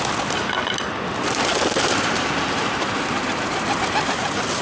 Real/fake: real